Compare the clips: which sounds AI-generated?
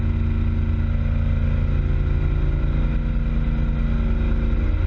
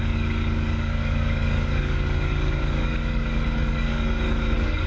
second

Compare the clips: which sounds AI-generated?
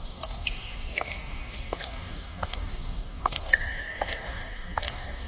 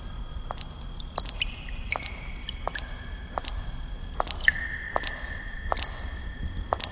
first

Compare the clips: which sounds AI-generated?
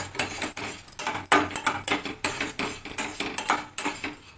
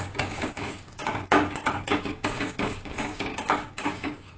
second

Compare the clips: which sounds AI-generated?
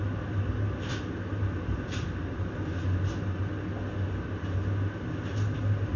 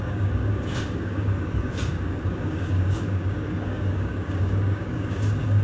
second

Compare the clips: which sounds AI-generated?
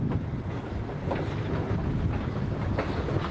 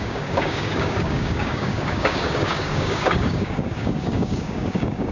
second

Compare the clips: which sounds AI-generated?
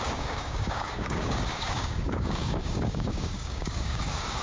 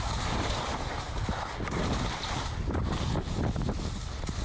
first